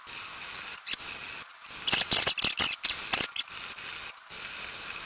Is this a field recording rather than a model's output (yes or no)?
yes